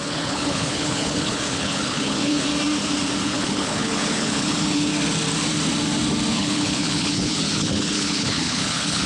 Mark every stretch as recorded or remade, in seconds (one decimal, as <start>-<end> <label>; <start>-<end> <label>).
0.0-2.5 remade; 2.5-3.2 recorded; 3.2-4.9 remade; 4.9-6.3 recorded; 6.3-9.1 remade